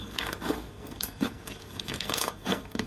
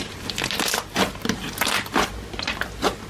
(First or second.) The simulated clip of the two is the first